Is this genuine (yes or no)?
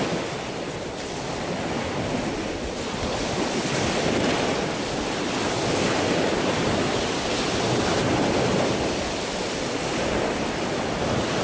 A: yes